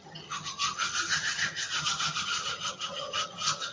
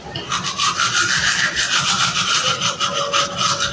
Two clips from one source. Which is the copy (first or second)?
first